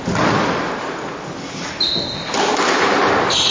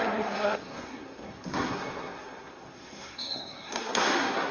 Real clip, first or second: first